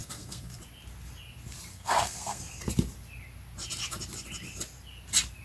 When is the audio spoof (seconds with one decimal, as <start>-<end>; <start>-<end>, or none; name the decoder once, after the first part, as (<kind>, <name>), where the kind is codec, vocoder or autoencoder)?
0.0-0.6 (codec, SNAC); 1.7-2.4